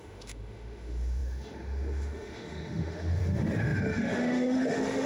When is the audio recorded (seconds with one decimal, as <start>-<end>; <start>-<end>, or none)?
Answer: none